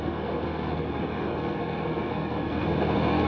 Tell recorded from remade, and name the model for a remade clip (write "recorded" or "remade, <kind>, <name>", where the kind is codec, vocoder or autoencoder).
remade, codec, SNAC